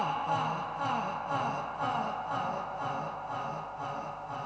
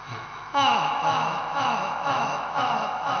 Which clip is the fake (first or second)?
second